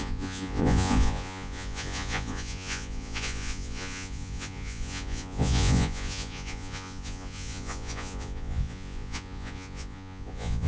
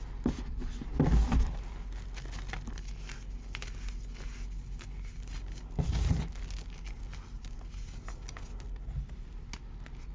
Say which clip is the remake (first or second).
first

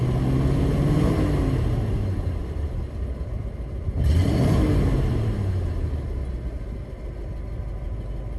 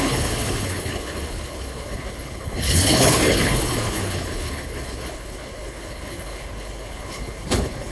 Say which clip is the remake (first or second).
second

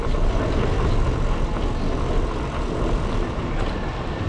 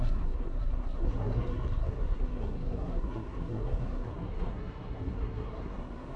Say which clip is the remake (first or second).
second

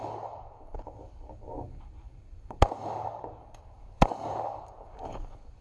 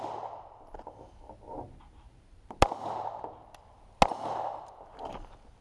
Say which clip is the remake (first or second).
first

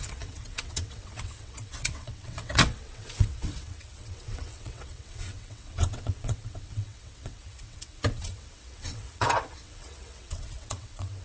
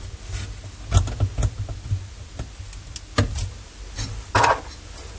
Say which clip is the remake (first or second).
first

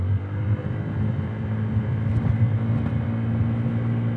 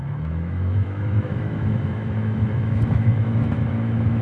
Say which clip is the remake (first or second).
second